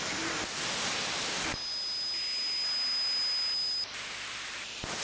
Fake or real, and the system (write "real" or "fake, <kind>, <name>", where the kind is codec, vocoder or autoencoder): real